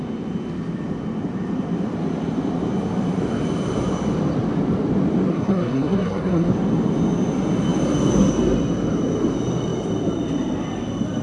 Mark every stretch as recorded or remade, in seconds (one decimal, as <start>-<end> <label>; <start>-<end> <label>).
0.0-5.3 recorded; 5.3-6.5 remade; 6.5-11.2 recorded